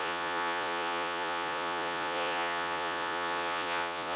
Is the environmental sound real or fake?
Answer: fake